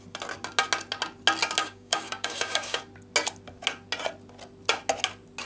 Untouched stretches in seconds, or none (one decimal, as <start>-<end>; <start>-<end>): 0.0-1.6; 2.8-5.5